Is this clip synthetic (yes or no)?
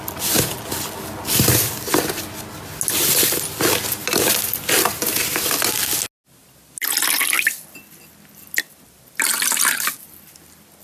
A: no